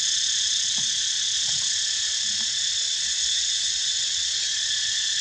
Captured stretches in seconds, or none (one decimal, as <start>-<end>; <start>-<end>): 0.0-2.9; 4.5-5.2